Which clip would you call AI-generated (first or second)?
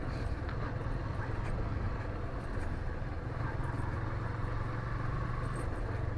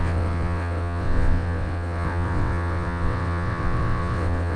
second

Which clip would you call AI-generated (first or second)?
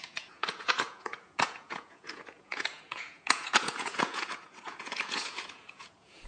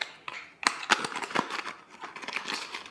first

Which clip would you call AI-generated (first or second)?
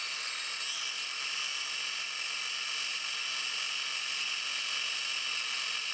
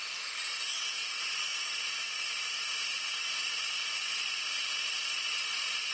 second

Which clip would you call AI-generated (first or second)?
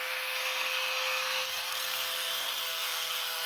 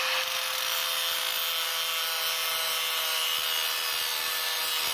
first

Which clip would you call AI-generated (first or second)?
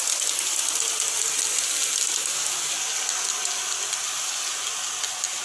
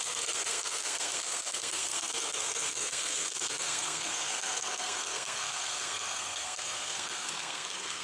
second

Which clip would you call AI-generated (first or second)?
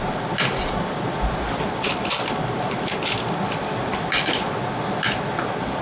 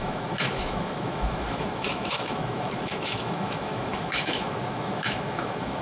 second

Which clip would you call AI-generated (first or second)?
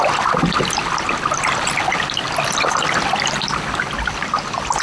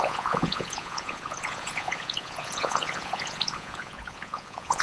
second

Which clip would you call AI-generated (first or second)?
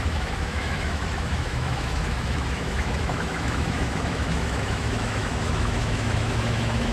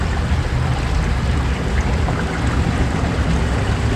first